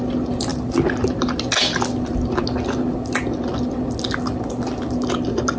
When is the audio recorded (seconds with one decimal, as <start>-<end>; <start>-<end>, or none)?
0.0-5.6